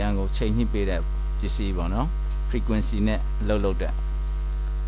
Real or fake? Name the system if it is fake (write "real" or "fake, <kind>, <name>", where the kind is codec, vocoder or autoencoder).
real